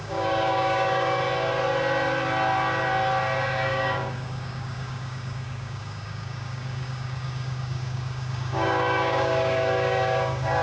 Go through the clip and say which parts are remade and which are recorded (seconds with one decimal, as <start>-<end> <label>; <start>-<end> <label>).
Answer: 0.0-1.2 remade; 1.2-3.4 recorded; 3.4-10.6 remade

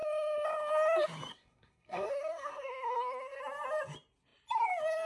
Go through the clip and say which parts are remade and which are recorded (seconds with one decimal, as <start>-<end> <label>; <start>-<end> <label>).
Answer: 0.0-1.3 recorded; 1.3-3.4 remade; 3.4-5.1 recorded

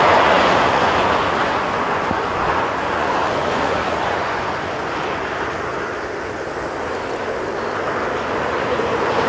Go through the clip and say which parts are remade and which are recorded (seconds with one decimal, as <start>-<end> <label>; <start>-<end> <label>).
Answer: 0.0-5.2 remade; 5.2-8.2 recorded; 8.2-9.3 remade

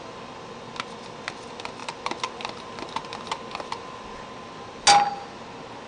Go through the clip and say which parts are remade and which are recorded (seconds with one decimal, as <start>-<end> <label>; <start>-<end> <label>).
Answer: 0.0-5.9 recorded

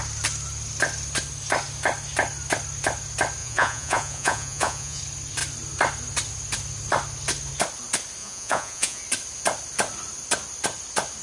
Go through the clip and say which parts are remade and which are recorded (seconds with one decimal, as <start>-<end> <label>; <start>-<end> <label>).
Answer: 0.0-3.4 recorded; 3.4-5.0 remade; 5.0-8.2 recorded; 8.2-9.0 remade; 9.0-11.2 recorded